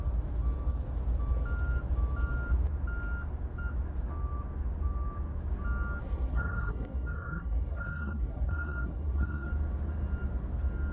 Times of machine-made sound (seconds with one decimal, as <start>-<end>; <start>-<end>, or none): 6.0-9.5

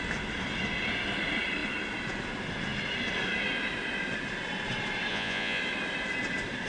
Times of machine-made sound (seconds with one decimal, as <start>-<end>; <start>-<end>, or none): 5.1-5.6

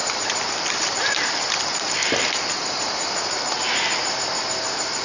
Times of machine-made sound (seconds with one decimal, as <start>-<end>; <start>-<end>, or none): 0.0-3.0

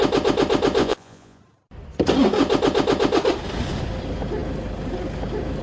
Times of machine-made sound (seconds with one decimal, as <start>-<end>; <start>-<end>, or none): 0.8-1.4

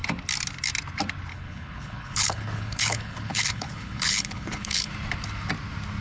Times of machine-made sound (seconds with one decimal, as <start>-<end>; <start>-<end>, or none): 1.3-4.9

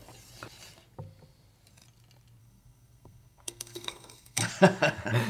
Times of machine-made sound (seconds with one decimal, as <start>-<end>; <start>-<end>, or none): 2.4-4.5

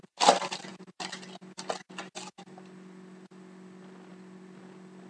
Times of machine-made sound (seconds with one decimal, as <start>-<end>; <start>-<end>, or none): none